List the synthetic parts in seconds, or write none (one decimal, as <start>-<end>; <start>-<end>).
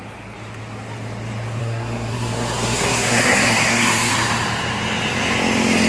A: 1.6-4.1